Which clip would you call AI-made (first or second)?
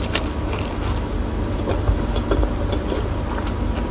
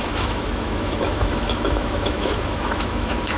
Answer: second